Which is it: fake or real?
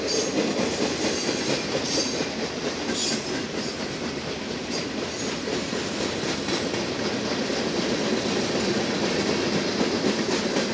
real